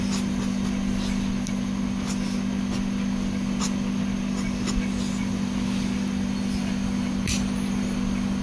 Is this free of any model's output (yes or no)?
yes